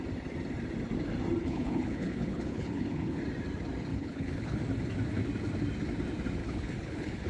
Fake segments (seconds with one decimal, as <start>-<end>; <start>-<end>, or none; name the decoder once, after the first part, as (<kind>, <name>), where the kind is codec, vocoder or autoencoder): 1.4-3.2 (codec, HILCodec); 3.9-4.6; 6.4-7.3